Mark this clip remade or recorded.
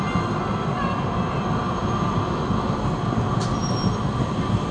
recorded